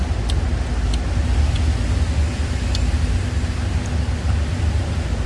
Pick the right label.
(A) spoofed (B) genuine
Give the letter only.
B